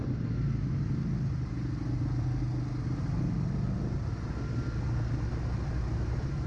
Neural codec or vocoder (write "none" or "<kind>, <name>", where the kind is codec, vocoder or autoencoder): none